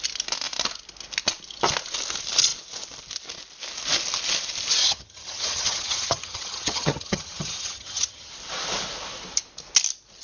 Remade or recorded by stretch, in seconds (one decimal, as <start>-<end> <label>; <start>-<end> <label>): 0.0-4.8 recorded; 4.8-8.3 remade; 8.3-10.2 recorded